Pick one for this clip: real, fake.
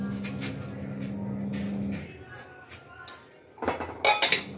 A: real